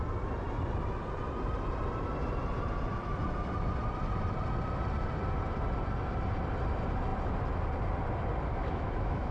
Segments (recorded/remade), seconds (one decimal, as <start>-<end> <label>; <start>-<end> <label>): 0.0-8.5 recorded; 8.5-9.3 remade